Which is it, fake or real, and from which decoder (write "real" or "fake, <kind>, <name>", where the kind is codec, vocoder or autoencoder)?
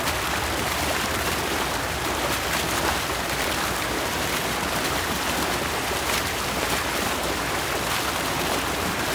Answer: fake, vocoder, BigVGAN v2